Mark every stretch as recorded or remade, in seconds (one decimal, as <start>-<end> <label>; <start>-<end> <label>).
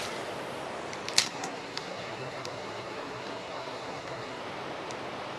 0.0-1.2 recorded; 1.2-4.4 remade; 4.4-5.4 recorded